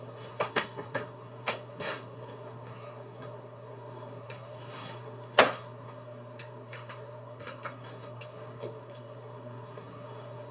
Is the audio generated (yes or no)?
yes